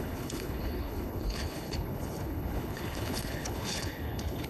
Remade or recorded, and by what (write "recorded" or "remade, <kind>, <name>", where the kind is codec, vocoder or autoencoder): remade, codec, HILCodec